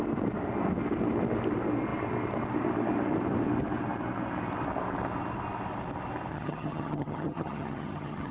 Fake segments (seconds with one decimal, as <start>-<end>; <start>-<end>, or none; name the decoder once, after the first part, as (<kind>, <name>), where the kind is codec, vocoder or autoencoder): 6.3-8.3 (vocoder, HiFi-GAN)